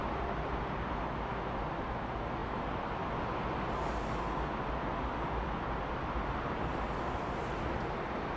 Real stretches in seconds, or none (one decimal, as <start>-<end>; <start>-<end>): 0.0-8.4